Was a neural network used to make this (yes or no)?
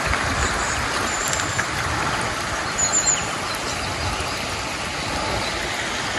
no